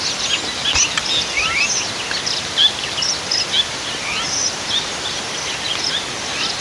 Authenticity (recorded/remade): recorded